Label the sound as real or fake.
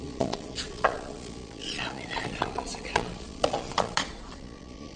fake